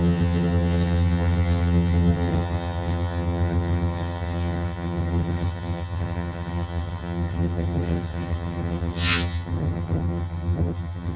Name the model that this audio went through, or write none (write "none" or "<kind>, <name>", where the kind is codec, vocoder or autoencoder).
vocoder, HiFi-GAN